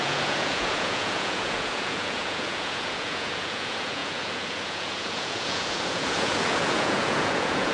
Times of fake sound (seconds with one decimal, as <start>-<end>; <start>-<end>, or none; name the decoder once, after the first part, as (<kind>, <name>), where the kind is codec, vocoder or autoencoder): 0.0-7.7 (vocoder, Vocos)